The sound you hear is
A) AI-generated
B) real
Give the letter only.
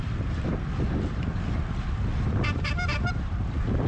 A